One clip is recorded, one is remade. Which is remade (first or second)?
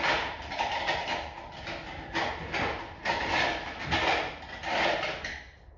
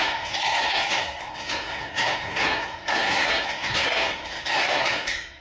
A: second